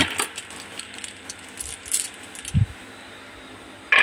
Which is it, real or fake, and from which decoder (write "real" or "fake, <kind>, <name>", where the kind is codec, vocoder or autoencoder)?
real